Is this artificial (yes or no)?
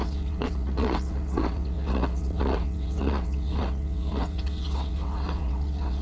yes